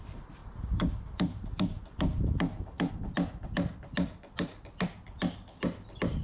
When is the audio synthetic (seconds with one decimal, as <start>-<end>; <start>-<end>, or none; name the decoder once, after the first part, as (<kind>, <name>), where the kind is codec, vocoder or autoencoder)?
0.4-2.9 (vocoder, BigVGAN v2)